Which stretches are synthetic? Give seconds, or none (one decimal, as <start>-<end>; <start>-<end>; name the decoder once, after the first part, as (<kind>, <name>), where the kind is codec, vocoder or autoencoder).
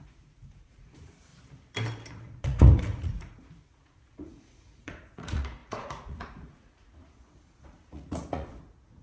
0.0-1.3 (vocoder, Vocos); 2.1-9.0